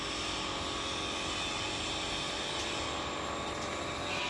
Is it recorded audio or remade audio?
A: recorded